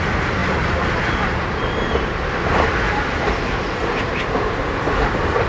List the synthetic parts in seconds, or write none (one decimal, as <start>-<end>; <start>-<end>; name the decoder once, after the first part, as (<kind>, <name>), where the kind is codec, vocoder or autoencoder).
0.0-0.4 (vocoder, BigVGAN v2); 1.4-3.8; 4.6-5.5